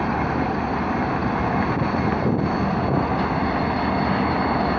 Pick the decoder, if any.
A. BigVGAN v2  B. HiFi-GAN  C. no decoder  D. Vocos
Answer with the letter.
C